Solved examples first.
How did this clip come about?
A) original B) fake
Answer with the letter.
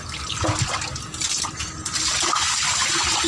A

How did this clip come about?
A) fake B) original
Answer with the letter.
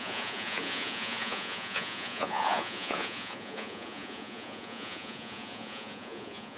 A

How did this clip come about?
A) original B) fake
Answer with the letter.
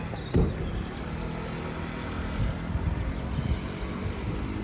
A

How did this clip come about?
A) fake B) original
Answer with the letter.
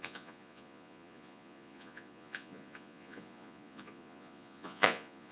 A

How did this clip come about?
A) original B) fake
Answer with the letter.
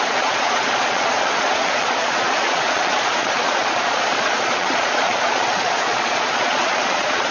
B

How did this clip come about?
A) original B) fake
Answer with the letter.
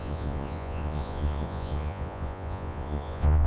B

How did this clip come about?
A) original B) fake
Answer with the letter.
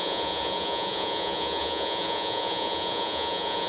B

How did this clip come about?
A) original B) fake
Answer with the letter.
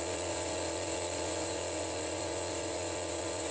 B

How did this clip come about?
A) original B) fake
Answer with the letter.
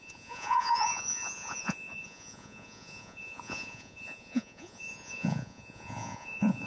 B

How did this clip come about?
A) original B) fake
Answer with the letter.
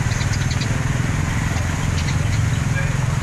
A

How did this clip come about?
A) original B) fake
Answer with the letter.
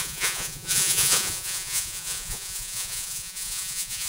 B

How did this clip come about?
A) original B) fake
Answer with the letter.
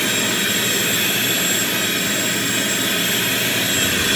A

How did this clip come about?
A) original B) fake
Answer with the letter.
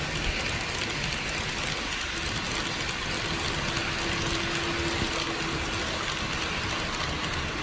A